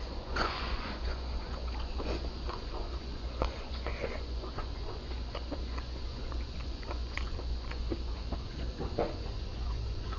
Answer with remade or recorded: remade